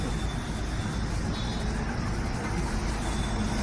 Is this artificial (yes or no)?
no